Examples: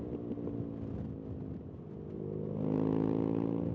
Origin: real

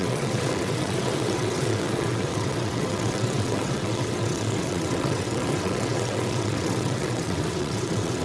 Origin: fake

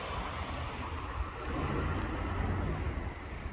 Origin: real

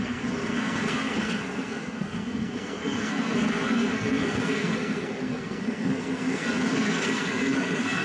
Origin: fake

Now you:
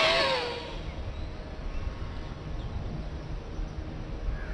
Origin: real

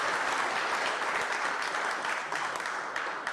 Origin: real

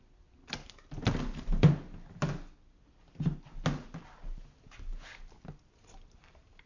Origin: real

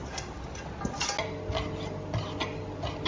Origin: real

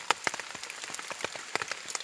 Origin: fake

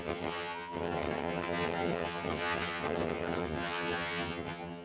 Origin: fake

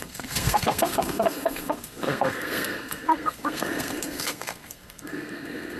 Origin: fake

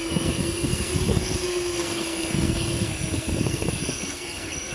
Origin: fake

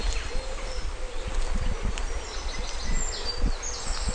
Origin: real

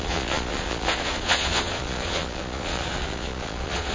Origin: fake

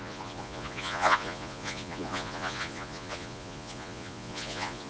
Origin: fake